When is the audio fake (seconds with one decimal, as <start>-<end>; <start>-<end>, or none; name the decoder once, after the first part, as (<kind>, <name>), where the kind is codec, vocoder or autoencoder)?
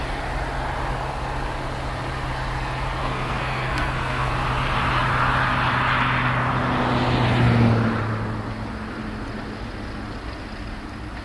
3.0-4.3 (codec, SNAC)